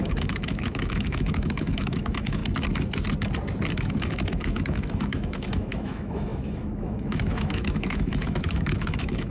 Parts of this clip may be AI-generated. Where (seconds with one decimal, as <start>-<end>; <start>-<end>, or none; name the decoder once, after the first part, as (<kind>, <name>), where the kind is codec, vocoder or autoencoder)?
0.0-2.4 (autoencoder, DAC-VAE); 3.8-9.3